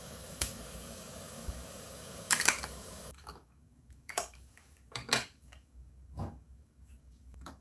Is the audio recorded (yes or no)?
no